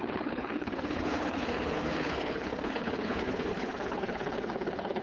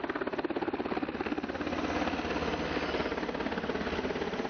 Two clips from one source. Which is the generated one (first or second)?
first